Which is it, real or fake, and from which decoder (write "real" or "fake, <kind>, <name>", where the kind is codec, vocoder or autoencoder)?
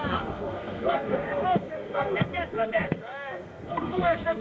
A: fake, codec, SNAC